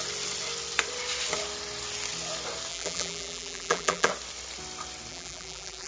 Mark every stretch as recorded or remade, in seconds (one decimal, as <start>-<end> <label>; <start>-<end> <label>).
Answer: 0.0-2.7 recorded; 2.7-4.1 remade; 4.1-5.1 recorded; 5.1-5.9 remade